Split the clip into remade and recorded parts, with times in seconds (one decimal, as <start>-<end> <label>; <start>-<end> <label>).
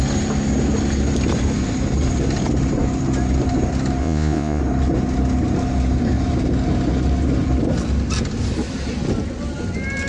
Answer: 0.0-4.0 recorded; 4.0-4.6 remade; 4.6-10.1 recorded